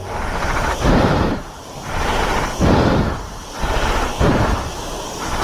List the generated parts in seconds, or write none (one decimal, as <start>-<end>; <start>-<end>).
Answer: 0.0-2.3; 4.1-5.4